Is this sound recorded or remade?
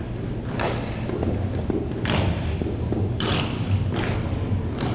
recorded